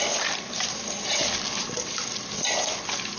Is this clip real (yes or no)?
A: yes